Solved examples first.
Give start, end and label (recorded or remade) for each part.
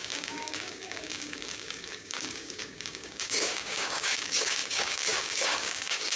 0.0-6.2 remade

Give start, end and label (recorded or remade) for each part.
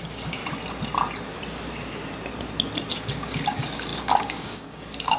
0.0-0.4 remade; 0.4-2.9 recorded; 2.9-5.2 remade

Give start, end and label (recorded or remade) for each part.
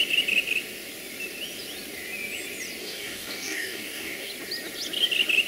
0.0-2.8 recorded; 2.8-4.3 remade; 4.3-5.5 recorded